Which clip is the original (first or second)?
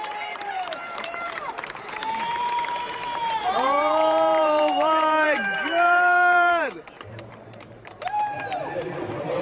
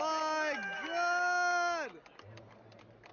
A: second